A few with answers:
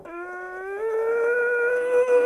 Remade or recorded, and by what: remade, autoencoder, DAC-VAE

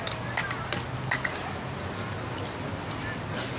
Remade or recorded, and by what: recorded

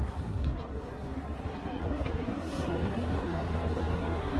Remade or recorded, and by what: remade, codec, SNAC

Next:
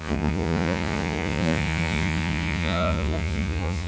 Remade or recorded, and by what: remade, vocoder, Vocos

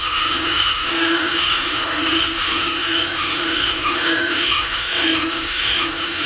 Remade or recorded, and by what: remade, autoencoder, DAC-VAE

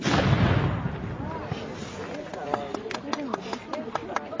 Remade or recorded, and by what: recorded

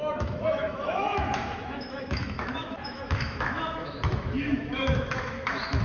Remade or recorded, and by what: remade, autoencoder, DAC-VAE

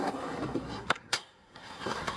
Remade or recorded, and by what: remade, codec, SNAC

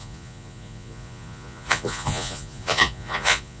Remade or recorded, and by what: remade, vocoder, Vocos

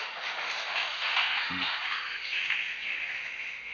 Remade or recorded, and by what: remade, autoencoder, DAC-VAE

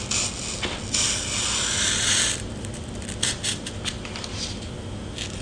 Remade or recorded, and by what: recorded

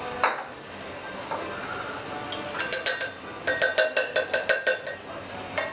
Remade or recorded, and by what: recorded